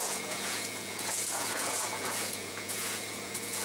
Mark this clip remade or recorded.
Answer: remade